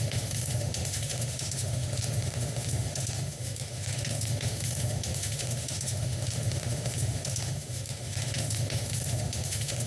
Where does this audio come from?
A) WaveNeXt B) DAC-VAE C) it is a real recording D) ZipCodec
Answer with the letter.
B